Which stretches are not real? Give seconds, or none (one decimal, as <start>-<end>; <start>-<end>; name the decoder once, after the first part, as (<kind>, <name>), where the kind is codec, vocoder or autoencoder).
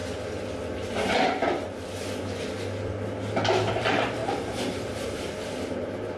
3.7-6.2 (vocoder, BigVGAN v2)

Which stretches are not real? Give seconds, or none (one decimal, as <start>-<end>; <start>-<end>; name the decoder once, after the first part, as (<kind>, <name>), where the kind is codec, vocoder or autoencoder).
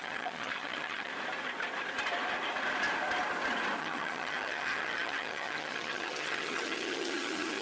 0.0-1.1 (vocoder, HiFi-GAN); 3.8-7.6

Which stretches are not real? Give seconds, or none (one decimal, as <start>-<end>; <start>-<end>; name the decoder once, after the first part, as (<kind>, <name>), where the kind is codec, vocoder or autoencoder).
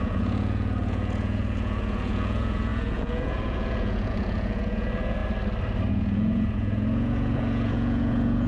0.0-5.2 (vocoder, Vocos); 5.9-8.5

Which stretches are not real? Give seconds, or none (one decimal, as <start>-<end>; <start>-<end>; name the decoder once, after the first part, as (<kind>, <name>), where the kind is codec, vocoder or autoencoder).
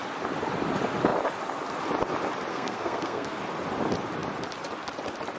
2.5-3.4 (codec, SNAC)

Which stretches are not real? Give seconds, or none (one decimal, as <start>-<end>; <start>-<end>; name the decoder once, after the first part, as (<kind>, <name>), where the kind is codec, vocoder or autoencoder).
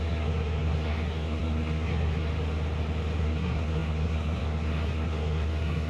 0.0-2.3 (codec, SNAC); 3.2-5.9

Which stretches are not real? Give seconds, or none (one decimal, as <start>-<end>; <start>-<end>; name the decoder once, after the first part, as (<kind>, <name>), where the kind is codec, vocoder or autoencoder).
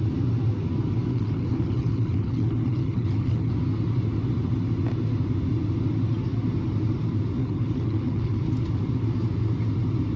1.1-3.5 (codec, HILCodec); 7.4-8.4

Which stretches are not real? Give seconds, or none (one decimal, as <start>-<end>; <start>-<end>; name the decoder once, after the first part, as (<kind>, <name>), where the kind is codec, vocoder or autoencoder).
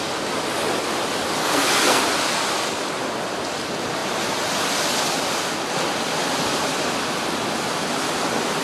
1.4-2.0 (codec, SNAC)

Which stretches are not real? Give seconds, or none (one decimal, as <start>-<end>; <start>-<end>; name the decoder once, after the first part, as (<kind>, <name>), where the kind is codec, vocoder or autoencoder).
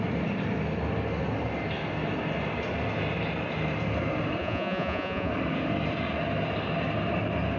4.4-5.3 (vocoder, Vocos)